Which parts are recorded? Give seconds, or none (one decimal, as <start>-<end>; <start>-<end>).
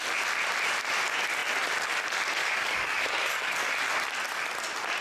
0.0-2.4; 3.7-5.0